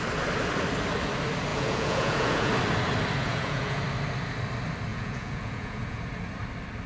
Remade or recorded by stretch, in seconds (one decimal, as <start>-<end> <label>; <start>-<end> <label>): 0.0-1.5 recorded; 1.5-2.5 remade; 2.5-3.2 recorded; 3.2-3.8 remade; 3.8-4.9 recorded; 4.9-6.0 remade; 6.0-6.9 recorded